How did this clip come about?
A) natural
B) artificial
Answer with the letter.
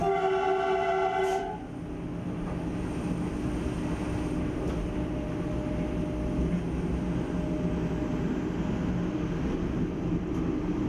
A